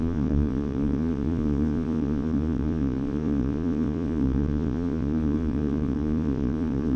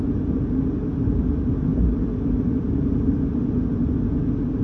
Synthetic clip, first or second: first